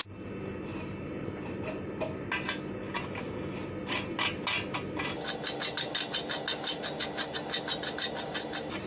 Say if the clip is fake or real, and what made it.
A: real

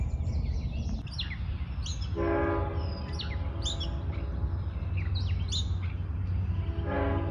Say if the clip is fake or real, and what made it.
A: real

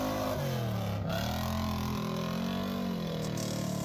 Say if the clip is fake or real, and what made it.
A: real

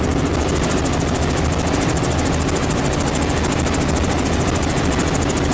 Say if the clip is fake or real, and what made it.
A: real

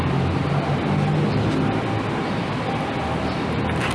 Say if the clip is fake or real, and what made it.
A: real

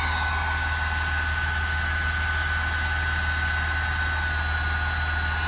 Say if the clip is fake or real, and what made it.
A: real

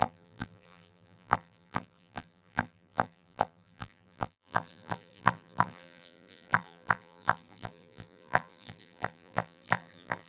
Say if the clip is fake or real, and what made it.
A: fake, vocoder, BigVGAN v2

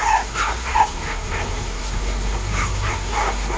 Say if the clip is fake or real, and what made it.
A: fake, codec, SNAC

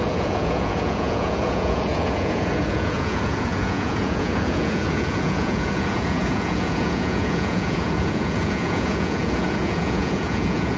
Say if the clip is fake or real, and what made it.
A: fake, vocoder, Vocos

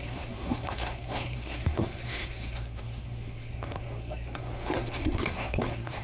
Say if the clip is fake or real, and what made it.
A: fake, codec, SNAC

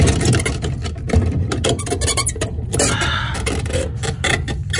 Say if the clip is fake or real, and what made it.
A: real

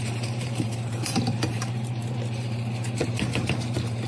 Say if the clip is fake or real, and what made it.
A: fake, vocoder, BigVGAN v2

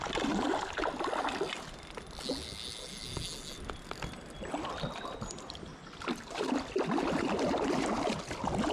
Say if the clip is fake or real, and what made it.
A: real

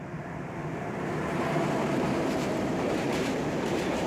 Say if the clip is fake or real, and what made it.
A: fake, vocoder, BigVGAN v2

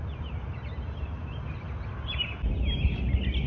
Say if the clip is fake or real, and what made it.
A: real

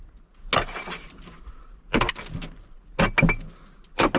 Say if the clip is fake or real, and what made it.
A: real